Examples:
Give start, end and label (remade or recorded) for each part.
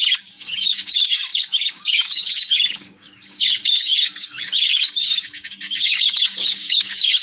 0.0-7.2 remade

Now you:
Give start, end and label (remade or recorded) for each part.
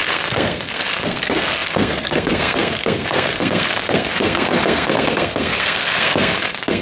0.0-6.8 remade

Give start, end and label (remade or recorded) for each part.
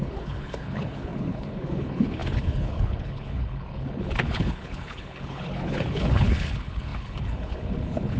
0.0-8.2 remade